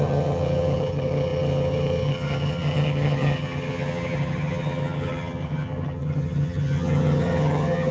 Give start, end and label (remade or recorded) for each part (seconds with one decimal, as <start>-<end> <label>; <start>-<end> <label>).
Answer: 0.0-7.9 remade